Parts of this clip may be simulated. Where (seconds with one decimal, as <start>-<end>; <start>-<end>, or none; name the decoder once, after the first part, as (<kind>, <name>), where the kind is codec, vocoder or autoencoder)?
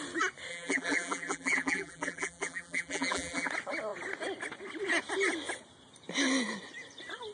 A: 0.5-3.5 (vocoder, BigVGAN v2)